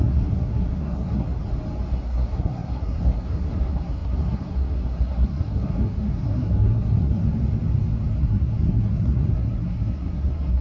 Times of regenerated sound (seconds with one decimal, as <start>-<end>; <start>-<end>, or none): 0.0-1.4; 1.9-7.2; 8.2-10.6